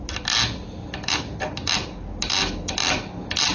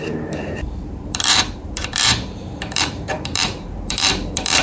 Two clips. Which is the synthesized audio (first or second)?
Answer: second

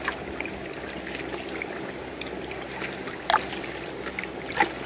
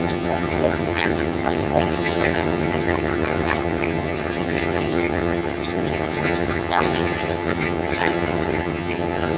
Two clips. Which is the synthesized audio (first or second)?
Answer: second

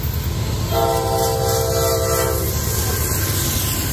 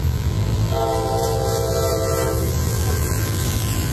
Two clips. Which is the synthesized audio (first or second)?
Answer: second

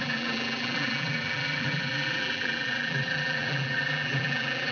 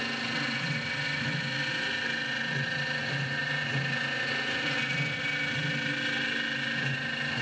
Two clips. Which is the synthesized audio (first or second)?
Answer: first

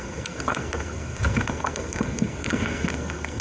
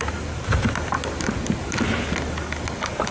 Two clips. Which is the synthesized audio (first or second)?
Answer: first